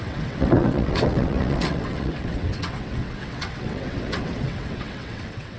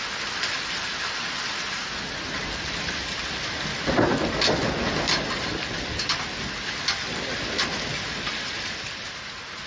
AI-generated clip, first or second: first